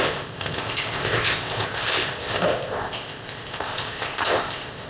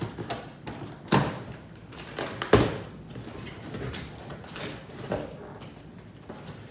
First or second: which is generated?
first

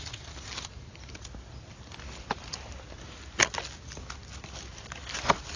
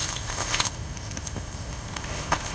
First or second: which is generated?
second